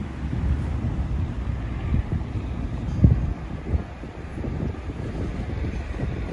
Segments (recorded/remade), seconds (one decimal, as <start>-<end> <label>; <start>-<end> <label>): 0.0-3.3 remade; 3.3-6.3 recorded